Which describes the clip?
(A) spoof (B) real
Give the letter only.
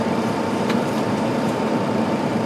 A